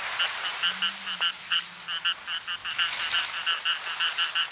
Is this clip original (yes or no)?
yes